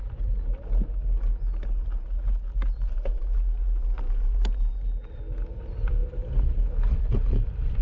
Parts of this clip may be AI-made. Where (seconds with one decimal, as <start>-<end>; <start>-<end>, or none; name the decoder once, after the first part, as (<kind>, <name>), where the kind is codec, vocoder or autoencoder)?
6.0-7.8 (vocoder, BigVGAN v2)